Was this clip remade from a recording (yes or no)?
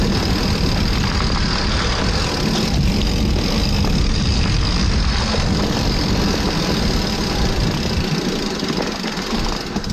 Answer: no